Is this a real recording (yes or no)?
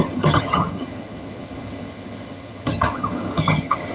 no